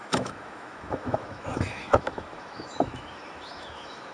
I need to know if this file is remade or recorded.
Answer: remade